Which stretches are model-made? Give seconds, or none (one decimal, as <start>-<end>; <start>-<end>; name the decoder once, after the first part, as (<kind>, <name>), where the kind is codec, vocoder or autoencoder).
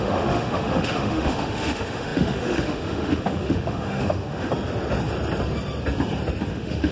0.0-4.5 (autoencoder, DAC-VAE); 6.5-6.9